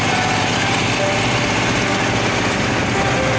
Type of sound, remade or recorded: recorded